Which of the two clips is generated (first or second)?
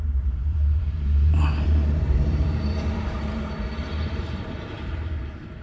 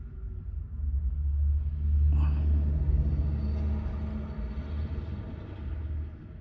first